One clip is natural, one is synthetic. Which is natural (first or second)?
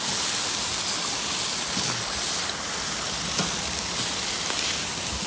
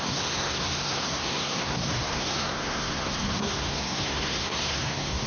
first